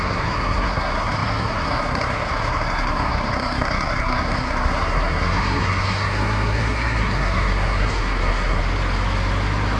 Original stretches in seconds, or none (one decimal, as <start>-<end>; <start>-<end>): 8.6-9.8

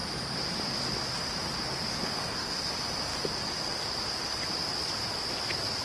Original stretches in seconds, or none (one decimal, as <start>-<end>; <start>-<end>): 0.0-2.2; 2.7-5.8

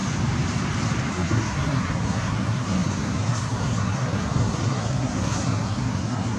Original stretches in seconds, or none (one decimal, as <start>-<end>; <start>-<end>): 0.0-1.1